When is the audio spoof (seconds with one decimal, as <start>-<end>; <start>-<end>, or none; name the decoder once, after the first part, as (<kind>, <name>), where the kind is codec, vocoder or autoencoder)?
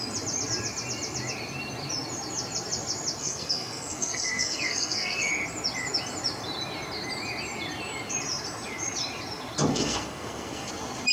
3.2-5.3 (codec, SNAC); 9.7-10.7